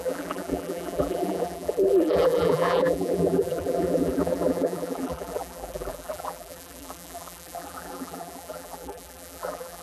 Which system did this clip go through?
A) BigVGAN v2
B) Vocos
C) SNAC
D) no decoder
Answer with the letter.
A